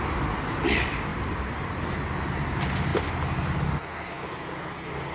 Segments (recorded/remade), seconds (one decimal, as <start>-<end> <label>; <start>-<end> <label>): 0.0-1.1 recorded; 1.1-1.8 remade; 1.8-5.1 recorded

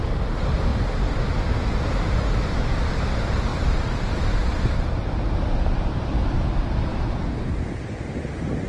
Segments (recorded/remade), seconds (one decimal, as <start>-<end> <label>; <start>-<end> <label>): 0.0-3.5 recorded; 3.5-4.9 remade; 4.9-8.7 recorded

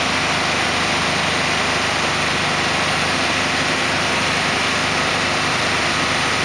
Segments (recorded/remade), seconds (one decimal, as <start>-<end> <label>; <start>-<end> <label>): 0.0-4.8 recorded; 4.8-6.0 remade; 6.0-6.4 recorded

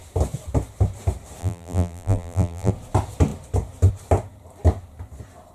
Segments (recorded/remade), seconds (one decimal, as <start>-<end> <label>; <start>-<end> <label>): 0.0-1.4 recorded; 1.4-2.7 remade; 2.7-5.5 recorded

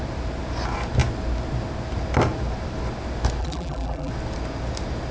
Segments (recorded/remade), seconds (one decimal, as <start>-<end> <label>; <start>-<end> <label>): 0.0-3.4 recorded; 3.4-4.1 remade; 4.1-5.1 recorded

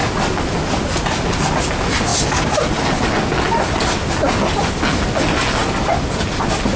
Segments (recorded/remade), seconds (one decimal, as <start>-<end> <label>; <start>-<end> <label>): 0.0-6.8 recorded

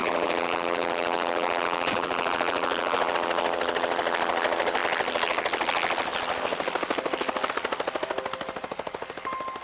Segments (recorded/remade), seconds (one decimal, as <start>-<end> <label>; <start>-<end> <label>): 0.0-3.1 remade; 3.1-9.6 recorded